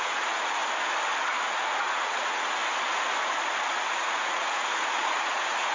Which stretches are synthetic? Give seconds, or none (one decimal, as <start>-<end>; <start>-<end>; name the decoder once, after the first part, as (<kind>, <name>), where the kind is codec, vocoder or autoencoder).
0.0-0.6 (vocoder, Vocos); 1.6-2.6; 3.9-5.7